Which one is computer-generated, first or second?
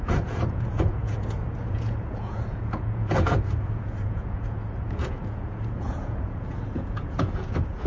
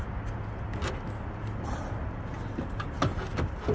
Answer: first